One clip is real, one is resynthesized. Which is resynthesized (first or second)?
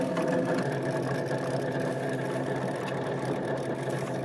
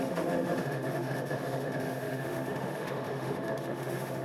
second